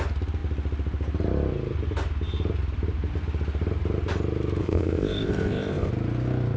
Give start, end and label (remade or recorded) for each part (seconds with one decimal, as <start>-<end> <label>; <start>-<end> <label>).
0.0-4.6 recorded; 4.6-5.9 remade; 5.9-6.6 recorded